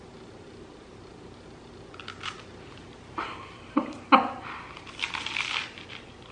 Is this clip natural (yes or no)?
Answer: yes